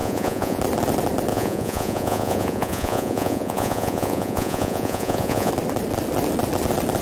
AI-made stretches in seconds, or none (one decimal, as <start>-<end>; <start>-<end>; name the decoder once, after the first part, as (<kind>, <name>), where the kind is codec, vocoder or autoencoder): 0.0-0.6 (vocoder, Vocos); 1.3-5.5